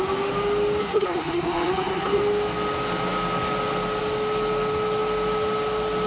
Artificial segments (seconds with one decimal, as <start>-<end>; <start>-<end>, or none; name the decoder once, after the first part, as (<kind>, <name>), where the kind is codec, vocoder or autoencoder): 0.8-2.2 (codec, SNAC)